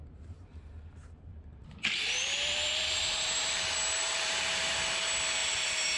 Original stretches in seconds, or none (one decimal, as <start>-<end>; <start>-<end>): 3.6-4.0; 4.8-5.4